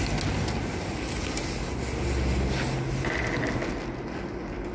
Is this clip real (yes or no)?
yes